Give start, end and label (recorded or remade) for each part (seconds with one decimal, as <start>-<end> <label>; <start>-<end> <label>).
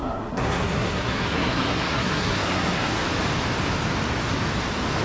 0.0-3.0 remade; 3.0-5.0 recorded